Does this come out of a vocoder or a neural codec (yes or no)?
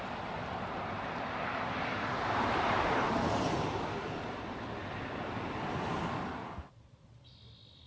no